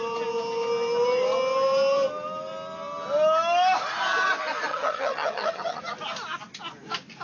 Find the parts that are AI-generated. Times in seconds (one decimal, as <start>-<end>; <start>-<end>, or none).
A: 4.7-5.8